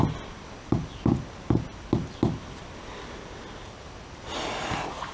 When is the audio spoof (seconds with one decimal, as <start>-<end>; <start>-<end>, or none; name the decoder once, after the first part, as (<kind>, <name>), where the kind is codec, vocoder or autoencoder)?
none